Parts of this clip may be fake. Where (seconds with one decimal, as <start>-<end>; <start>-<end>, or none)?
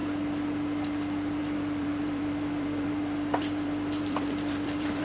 1.4-5.0